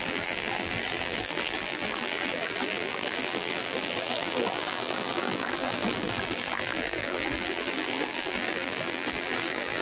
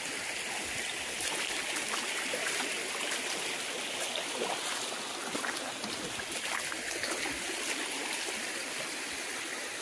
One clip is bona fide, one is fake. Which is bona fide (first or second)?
second